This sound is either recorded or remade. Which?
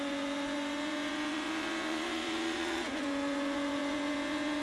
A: remade